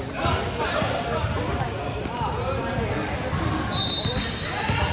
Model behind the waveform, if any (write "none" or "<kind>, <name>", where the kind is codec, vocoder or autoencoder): none